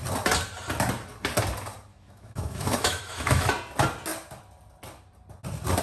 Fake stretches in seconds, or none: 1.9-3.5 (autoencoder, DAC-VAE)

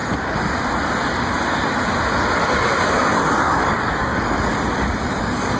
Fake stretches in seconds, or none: 3.4-4.5 (codec, DAC); 5.1-5.6

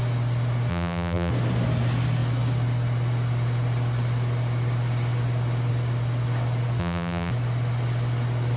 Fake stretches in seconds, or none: 0.7-1.3 (vocoder, BigVGAN v2); 6.8-7.3

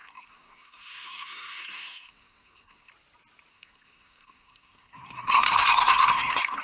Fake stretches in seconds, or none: 0.0-2.9 (codec, SNAC); 3.5-6.6

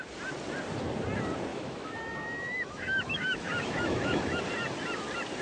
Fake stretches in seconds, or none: 1.5-4.4 (autoencoder, DAC-VAE)

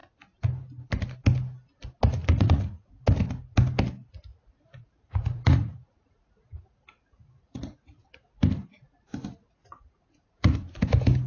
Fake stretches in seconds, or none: 2.2-2.9 (vocoder, Vocos); 4.3-8.3; 9.4-10.6

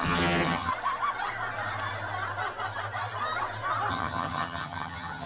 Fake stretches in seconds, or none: 0.0-0.7 (vocoder, HiFi-GAN); 3.9-5.3

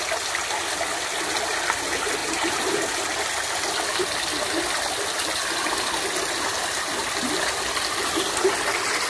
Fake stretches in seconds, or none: none